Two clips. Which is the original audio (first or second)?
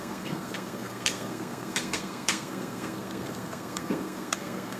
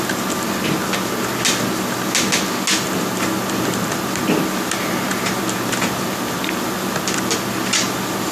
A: second